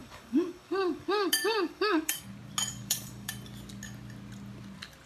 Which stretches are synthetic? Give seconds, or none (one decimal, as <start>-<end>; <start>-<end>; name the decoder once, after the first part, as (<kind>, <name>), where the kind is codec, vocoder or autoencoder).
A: 0.0-2.2 (codec, DAC); 2.7-3.3